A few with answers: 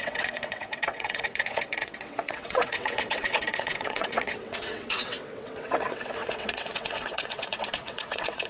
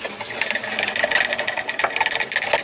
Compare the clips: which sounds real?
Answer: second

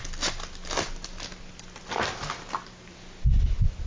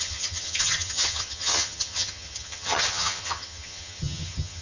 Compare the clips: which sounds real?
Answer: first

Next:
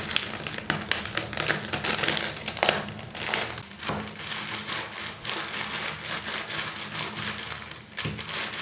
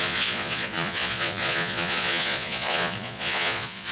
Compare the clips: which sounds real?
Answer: first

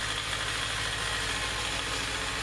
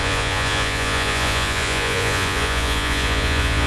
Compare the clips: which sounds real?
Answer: first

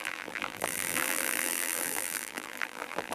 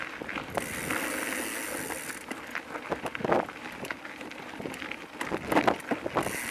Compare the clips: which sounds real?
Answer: second